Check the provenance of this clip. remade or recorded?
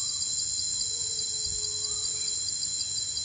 recorded